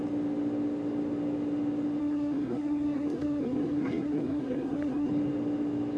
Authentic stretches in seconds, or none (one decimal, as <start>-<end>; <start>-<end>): 0.0-2.0; 5.1-6.0